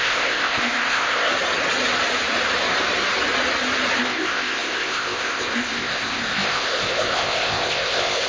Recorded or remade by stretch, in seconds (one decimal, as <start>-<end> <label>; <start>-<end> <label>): 0.0-1.3 remade; 1.3-4.0 recorded; 4.0-8.3 remade